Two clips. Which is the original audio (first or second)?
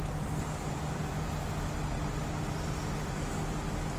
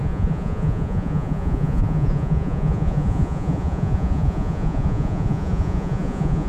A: first